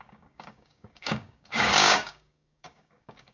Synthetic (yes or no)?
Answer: yes